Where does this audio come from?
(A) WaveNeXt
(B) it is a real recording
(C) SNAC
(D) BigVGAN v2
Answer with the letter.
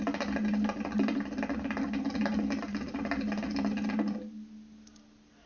B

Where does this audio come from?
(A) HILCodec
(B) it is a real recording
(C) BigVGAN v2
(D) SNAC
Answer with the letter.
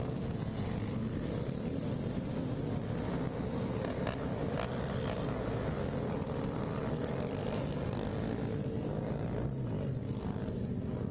B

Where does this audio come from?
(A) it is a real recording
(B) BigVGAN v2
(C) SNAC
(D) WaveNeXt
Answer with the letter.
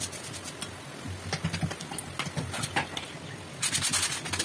A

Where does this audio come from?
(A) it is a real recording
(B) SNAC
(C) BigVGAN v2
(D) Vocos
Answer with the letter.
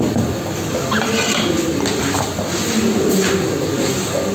A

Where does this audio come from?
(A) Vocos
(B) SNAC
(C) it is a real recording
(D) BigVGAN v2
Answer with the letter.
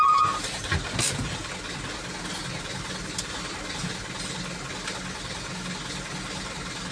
C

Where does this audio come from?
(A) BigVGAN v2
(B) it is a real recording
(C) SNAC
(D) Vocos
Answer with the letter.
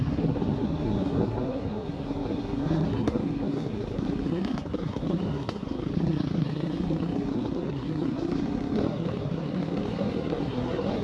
C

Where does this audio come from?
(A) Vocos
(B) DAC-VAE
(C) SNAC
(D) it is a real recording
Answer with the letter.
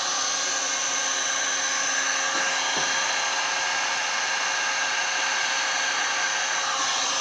D